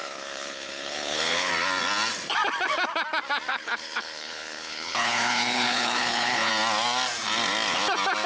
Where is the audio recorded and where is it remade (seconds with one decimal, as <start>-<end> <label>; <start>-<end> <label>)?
0.0-1.5 remade; 1.5-3.5 recorded; 3.5-6.5 remade; 6.5-8.3 recorded